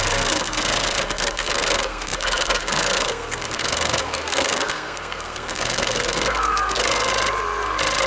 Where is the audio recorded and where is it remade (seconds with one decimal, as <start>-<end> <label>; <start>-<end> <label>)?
0.0-7.1 remade; 7.1-8.1 recorded